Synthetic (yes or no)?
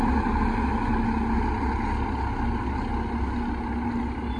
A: no